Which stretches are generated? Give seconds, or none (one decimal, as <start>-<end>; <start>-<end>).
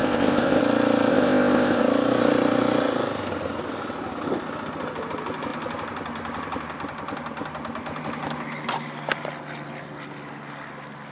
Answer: 0.0-0.6; 1.1-1.8